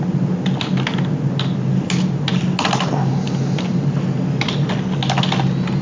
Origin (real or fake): real